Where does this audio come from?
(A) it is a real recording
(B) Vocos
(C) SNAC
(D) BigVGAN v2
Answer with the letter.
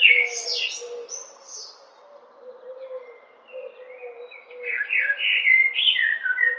A